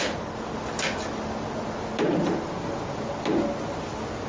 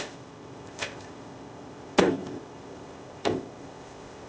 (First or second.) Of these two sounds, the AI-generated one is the second